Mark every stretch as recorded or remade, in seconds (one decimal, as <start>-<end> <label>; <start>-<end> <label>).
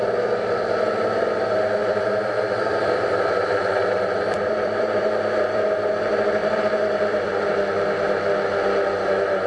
0.0-1.8 recorded; 1.8-5.7 remade; 5.7-6.4 recorded; 6.4-7.5 remade; 7.5-9.5 recorded